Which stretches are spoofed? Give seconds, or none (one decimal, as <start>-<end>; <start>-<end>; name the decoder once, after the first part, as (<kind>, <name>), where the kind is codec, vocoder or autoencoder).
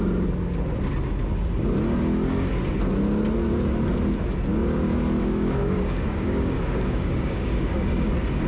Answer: 5.2-8.1 (codec, DAC)